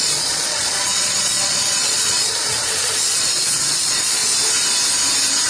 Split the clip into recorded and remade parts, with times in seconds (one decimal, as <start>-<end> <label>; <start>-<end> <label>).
0.0-4.2 remade; 4.2-5.5 recorded

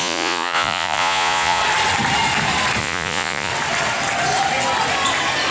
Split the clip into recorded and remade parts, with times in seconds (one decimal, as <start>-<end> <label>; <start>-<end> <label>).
0.0-1.6 remade; 1.6-2.8 recorded; 2.8-3.5 remade; 3.5-5.5 recorded